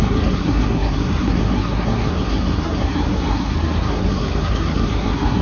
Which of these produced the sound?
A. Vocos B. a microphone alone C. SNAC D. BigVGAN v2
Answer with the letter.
C